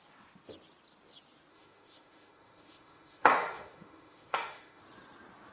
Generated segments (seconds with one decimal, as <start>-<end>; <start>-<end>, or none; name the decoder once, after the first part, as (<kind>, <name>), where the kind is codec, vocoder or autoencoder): 1.5-4.8 (autoencoder, DAC-VAE)